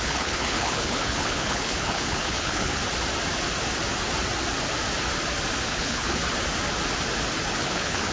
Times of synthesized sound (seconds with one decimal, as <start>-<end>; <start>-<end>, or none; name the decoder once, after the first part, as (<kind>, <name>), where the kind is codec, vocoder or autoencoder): 0.0-2.8 (codec, HILCodec); 5.7-6.2; 7.5-8.1